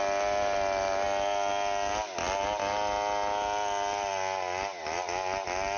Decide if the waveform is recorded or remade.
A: recorded